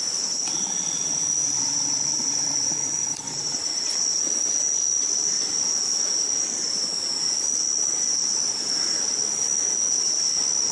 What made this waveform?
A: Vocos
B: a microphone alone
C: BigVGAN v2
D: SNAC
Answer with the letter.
B